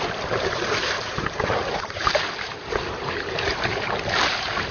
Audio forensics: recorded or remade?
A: remade